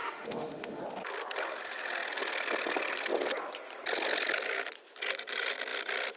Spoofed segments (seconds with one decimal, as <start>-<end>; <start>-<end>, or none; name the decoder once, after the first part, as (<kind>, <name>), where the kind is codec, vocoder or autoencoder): 0.0-0.8 (autoencoder, DAC-VAE)